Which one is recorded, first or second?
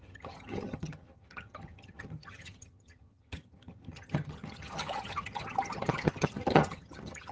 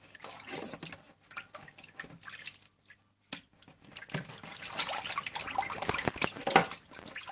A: second